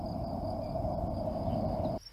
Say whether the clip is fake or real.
real